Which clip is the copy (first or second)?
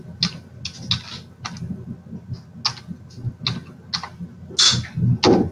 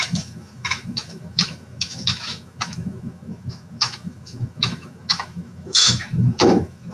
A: second